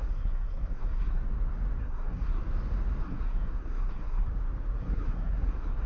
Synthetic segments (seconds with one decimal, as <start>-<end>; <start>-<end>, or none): 0.0-1.2; 1.8-2.4; 3.0-4.3; 4.8-5.9